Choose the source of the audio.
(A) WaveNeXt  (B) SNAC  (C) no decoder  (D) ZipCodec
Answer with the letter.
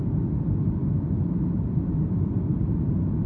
C